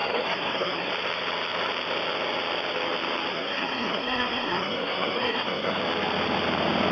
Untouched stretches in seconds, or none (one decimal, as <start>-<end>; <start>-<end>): 0.9-3.3; 5.8-6.9